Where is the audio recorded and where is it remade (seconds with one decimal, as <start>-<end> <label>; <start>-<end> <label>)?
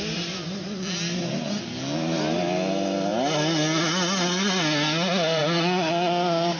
0.0-6.6 recorded